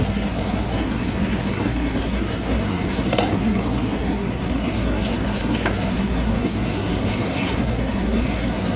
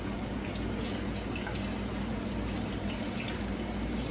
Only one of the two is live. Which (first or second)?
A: second